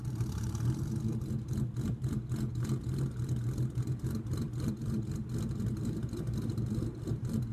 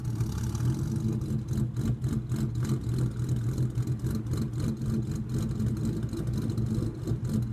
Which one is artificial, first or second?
first